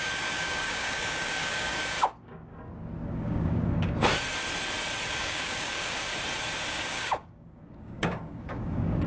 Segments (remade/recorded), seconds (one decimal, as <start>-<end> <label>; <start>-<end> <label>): 0.0-2.5 remade; 2.5-3.1 recorded; 3.1-4.0 remade; 4.0-5.1 recorded; 5.1-6.1 remade; 6.1-6.7 recorded; 6.7-9.1 remade